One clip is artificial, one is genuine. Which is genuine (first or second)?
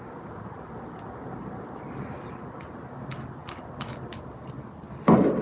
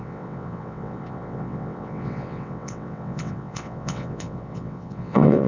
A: first